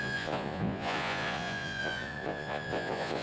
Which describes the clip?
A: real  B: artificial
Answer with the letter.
B